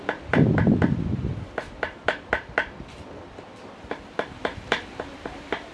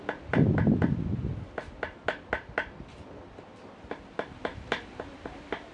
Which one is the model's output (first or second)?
first